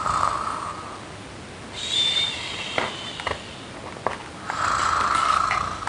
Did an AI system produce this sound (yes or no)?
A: no